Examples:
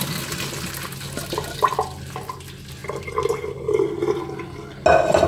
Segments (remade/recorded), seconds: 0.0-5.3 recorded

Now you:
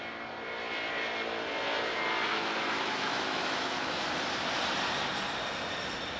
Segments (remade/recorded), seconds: 0.0-2.3 recorded; 2.3-4.0 remade; 4.0-6.2 recorded

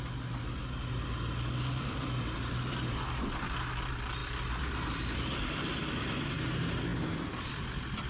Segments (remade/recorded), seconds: 0.0-8.1 recorded

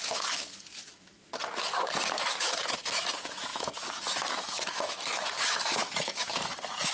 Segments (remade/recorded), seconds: 0.0-1.3 remade; 1.3-2.2 recorded; 2.2-6.9 remade

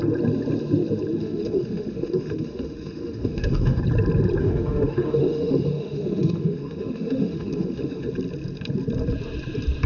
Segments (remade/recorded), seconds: 0.0-1.2 recorded; 1.2-3.8 remade; 3.8-4.4 recorded; 4.4-8.1 remade; 8.1-9.9 recorded

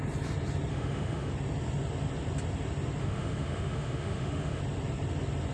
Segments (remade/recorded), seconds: 0.0-0.7 recorded; 0.7-1.3 remade; 1.3-3.0 recorded; 3.0-4.6 remade; 4.6-5.5 recorded

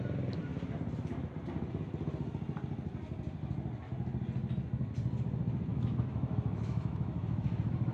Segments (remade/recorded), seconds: 0.0-5.7 recorded; 5.7-7.5 remade; 7.5-7.9 recorded

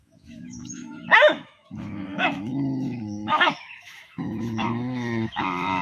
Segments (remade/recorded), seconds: 0.0-5.8 remade